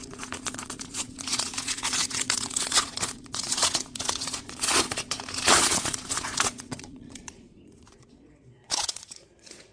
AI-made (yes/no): yes